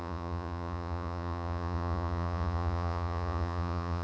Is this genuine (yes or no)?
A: no